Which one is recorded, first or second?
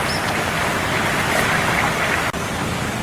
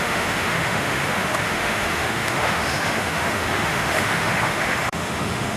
first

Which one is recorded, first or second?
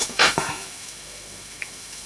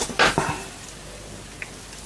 second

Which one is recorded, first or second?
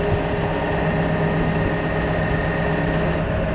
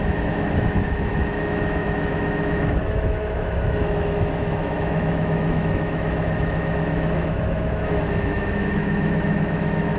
first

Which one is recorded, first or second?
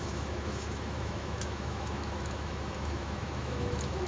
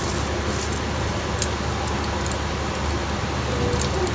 second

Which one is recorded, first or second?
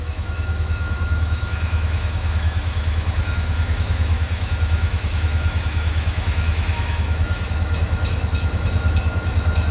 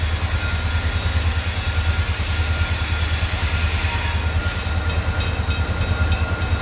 second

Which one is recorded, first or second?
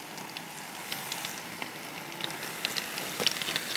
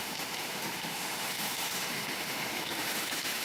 first